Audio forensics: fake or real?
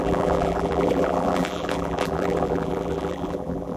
fake